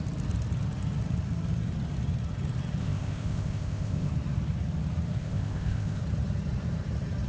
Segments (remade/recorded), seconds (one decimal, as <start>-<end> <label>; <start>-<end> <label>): 0.0-2.8 recorded; 2.8-4.1 remade; 4.1-5.2 recorded; 5.2-6.0 remade; 6.0-7.3 recorded

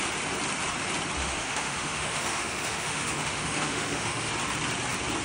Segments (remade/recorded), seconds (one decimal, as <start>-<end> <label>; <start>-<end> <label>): 0.0-1.2 recorded; 1.2-4.3 remade; 4.3-5.2 recorded